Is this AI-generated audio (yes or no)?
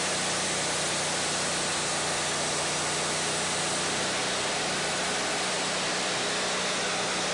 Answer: no